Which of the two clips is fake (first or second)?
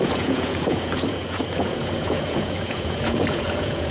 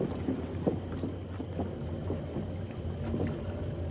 first